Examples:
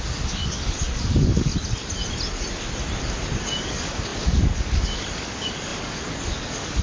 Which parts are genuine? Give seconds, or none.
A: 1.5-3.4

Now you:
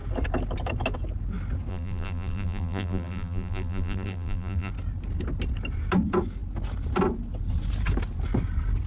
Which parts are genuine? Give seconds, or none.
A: 0.0-1.7; 4.7-8.9

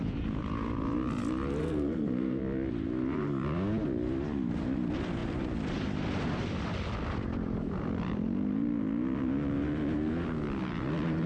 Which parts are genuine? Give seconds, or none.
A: 0.0-1.6; 2.4-11.3

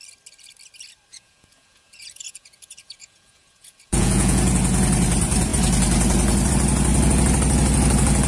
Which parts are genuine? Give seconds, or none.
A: 0.0-1.1; 4.5-8.3

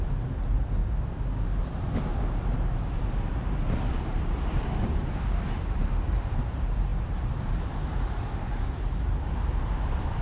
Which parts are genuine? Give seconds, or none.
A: 0.8-1.6; 2.1-3.9

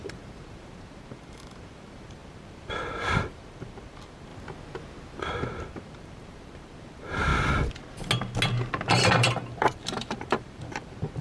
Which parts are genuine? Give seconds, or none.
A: 4.3-5.2; 7.3-8.9

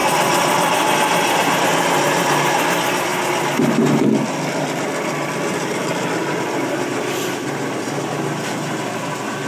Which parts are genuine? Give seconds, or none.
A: 0.0-9.5

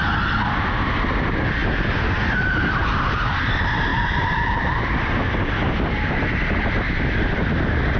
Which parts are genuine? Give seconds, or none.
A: 0.0-8.0